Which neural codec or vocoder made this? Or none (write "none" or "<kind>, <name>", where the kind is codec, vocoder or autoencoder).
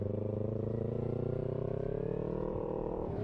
vocoder, BigVGAN v2